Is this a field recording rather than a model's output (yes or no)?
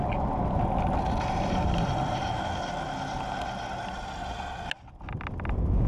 yes